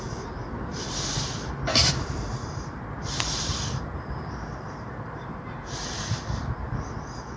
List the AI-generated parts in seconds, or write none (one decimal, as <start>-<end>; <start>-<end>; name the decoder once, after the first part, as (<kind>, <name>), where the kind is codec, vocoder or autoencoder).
0.7-1.3 (vocoder, BigVGAN v2); 1.8-6.2